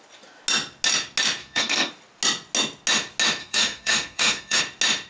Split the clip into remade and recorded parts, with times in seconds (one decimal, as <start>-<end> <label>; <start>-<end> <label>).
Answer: 0.0-1.4 recorded; 1.4-1.9 remade; 1.9-3.4 recorded; 3.4-4.6 remade; 4.6-5.1 recorded